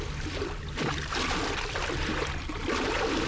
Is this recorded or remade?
recorded